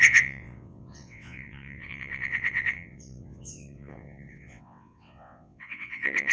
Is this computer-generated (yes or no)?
yes